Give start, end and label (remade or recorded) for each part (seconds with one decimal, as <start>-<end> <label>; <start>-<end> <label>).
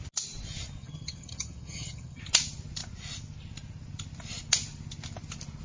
0.0-0.8 recorded; 0.8-2.2 remade; 2.2-5.6 recorded